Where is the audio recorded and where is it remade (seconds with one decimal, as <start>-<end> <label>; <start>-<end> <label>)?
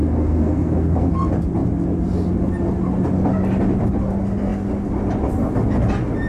0.0-1.1 remade; 1.1-6.3 recorded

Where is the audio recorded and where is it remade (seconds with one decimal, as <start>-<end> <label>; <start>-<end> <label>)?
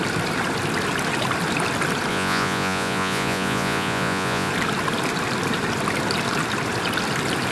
0.0-2.1 recorded; 2.1-4.5 remade; 4.5-7.5 recorded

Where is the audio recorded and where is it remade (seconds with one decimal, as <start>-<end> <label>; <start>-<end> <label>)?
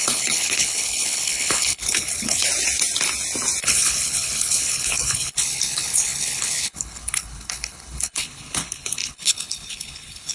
0.0-2.5 remade; 2.5-3.6 recorded; 3.6-10.3 remade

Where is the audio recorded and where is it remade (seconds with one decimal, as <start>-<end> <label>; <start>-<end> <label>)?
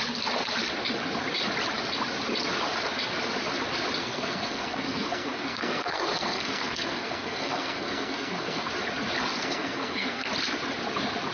0.0-4.0 recorded; 4.0-8.7 remade; 8.7-9.3 recorded; 9.3-10.3 remade; 10.3-11.3 recorded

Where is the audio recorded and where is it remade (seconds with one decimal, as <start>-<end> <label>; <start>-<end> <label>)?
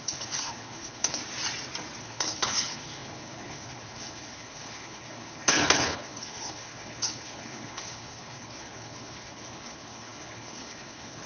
0.0-1.2 remade; 1.2-2.0 recorded; 2.0-11.3 remade